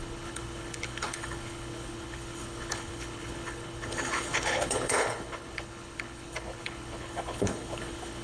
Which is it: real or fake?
fake